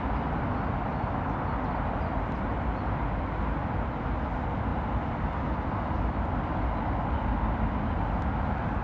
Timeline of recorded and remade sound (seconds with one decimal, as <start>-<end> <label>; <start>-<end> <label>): 0.0-8.8 recorded